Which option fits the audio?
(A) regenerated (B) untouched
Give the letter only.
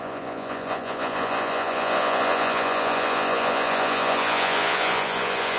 A